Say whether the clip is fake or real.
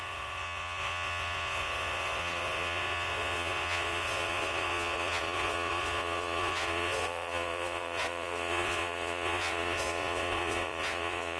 fake